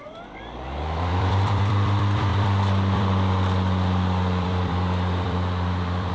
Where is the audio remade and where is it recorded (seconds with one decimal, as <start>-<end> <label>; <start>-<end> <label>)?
0.0-6.1 remade